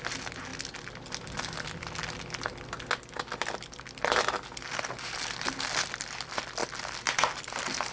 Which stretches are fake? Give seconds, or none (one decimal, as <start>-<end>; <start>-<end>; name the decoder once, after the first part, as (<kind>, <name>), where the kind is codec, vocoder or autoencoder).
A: none